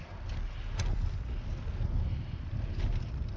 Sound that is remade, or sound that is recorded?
recorded